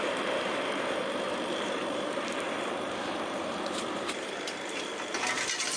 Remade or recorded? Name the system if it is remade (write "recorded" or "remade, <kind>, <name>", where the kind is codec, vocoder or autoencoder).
remade, vocoder, BigVGAN v2